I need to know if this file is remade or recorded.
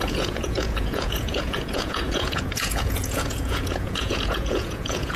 remade